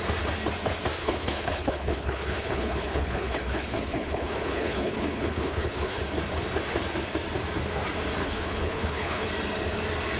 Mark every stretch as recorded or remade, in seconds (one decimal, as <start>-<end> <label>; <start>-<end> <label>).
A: 0.0-1.0 recorded; 1.0-6.0 remade; 6.0-8.2 recorded; 8.2-9.3 remade; 9.3-10.2 recorded